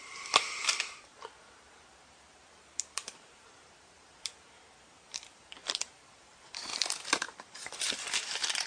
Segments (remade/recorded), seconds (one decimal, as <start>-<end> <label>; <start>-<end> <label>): 0.0-6.7 remade; 6.7-8.7 recorded